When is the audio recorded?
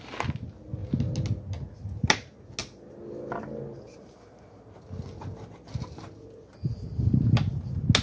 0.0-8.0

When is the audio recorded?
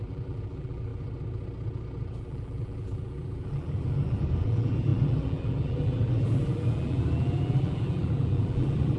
0.9-2.2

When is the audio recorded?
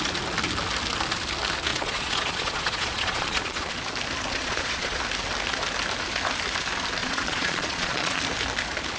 0.0-1.7; 3.7-4.3; 5.0-7.0; 8.2-9.0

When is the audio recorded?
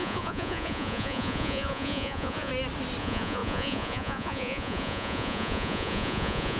2.5-3.0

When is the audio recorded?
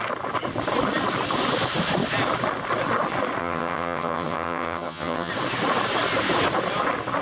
0.0-3.4; 5.3-7.2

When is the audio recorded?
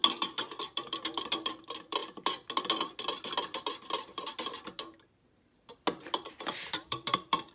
0.0-0.6; 2.0-6.3